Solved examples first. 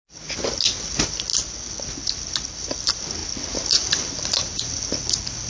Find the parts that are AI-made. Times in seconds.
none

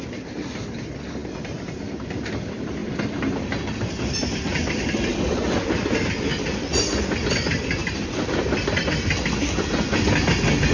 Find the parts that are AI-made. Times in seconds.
6.3-7.0; 7.8-8.4